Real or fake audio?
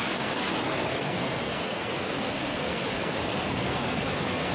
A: fake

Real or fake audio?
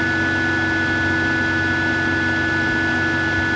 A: real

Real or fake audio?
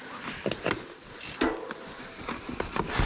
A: real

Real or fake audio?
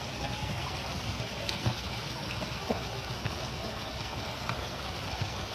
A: fake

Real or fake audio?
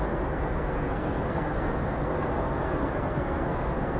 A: fake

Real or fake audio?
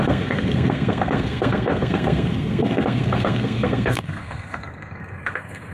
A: fake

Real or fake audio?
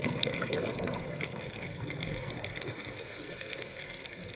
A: fake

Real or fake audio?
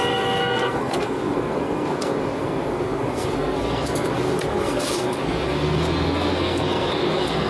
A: fake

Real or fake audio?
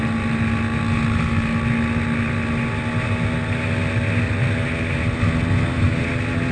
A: real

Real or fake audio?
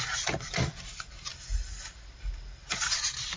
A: real